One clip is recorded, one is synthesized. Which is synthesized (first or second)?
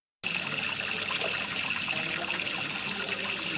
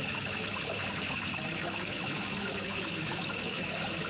second